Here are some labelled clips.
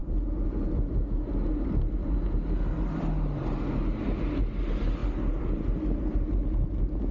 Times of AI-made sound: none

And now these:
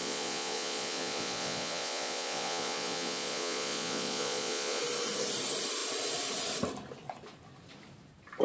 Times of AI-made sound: 0.0-4.8 (vocoder, Vocos)

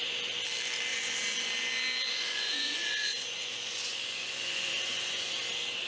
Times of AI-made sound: 0.9-1.5 (vocoder, Vocos); 2.1-5.4

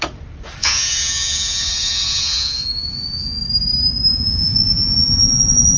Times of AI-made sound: 0.6-3.4 (vocoder, Vocos); 4.1-5.8

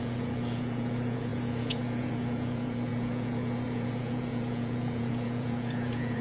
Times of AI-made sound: 0.0-6.2 (vocoder, Vocos)

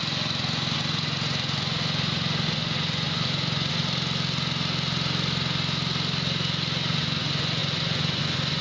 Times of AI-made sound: 0.0-3.8 (vocoder, Vocos); 6.9-8.6

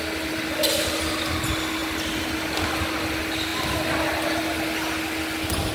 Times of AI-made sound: none

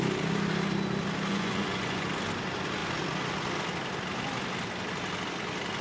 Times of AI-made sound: 1.3-2.1 (vocoder, Vocos)